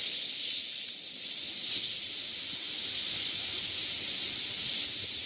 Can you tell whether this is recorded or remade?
recorded